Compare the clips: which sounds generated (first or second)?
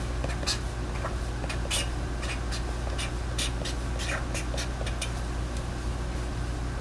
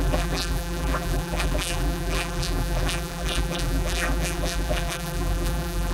second